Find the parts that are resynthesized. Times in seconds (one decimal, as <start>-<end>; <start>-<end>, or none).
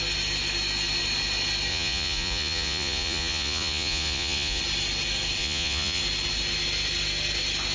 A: 1.7-4.6; 5.4-6.0